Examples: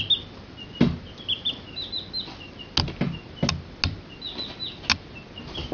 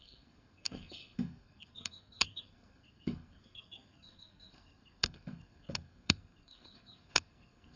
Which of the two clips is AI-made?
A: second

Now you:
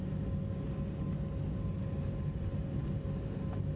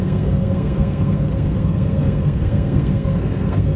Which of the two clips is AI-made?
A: second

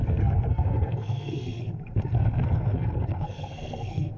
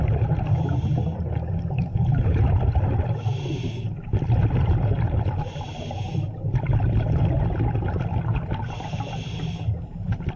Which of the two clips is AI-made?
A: first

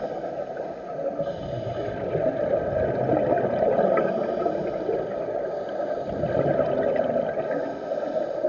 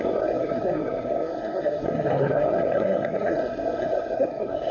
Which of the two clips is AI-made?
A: second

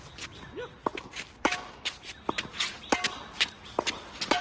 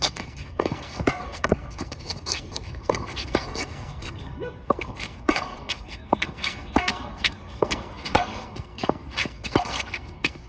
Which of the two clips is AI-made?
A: second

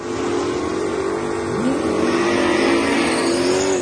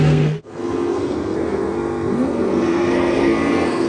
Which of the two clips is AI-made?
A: second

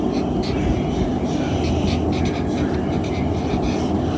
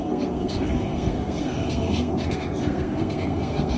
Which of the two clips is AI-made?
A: second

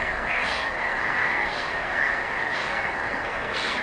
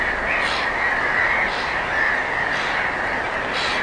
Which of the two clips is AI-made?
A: first